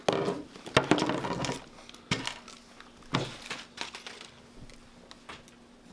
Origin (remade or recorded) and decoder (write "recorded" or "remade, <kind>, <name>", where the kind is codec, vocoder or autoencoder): recorded